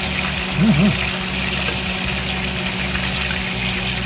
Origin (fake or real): real